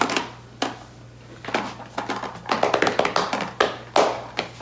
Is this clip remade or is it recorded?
recorded